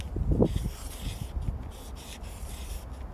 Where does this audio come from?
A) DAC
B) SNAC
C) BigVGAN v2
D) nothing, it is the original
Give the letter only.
D